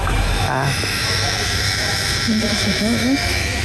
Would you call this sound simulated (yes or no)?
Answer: yes